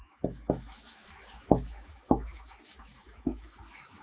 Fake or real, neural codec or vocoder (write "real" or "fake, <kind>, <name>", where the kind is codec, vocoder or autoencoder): fake, autoencoder, DAC-VAE